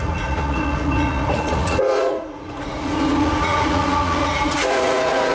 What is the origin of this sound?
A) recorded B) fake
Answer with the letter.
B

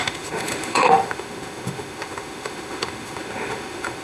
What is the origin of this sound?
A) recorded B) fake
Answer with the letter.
B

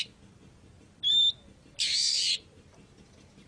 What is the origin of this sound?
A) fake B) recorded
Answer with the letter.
B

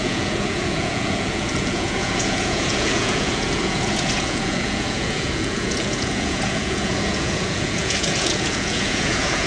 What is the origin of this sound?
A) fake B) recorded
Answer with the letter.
A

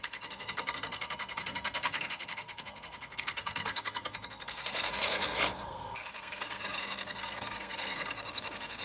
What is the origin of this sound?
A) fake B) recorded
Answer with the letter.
A